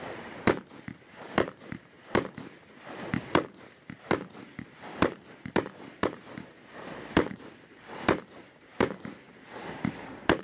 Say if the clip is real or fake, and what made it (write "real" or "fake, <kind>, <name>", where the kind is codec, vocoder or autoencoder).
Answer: fake, vocoder, BigVGAN v2